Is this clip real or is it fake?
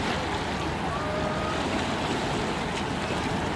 real